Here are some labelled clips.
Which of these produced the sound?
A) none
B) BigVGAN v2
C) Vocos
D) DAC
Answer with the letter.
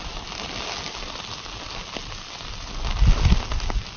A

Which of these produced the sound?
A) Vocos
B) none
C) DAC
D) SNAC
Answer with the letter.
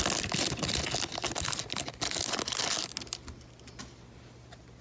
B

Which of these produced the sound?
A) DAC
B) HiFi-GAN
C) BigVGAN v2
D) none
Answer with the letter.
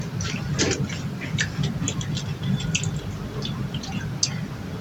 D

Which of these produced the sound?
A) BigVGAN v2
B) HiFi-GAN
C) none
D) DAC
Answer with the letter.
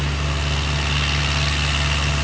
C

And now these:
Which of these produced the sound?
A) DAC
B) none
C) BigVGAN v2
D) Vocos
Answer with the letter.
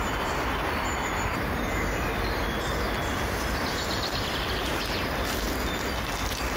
B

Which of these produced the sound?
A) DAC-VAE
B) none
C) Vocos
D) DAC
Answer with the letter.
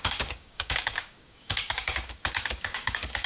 D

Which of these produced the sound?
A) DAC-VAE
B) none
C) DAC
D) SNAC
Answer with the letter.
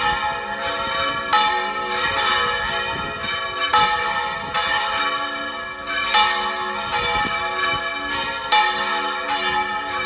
B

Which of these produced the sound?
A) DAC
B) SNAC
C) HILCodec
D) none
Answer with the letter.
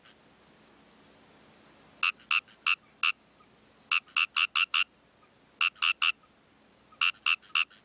D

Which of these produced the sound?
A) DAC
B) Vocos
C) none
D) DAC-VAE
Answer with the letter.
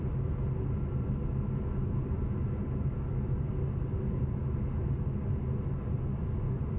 C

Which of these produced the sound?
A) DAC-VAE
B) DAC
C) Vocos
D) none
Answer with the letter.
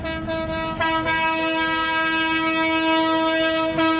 D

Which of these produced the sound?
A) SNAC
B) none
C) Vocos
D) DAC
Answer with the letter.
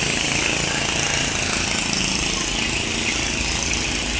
B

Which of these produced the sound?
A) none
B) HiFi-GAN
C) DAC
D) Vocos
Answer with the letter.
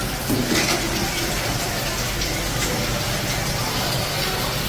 A